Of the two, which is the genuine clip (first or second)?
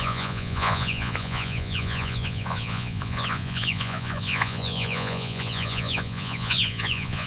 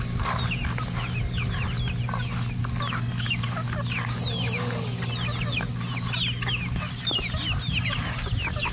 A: second